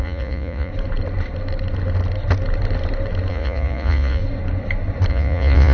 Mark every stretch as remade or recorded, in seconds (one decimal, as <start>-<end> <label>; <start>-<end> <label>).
0.0-0.7 remade; 0.7-3.3 recorded; 3.3-4.2 remade; 4.2-5.1 recorded; 5.1-5.7 remade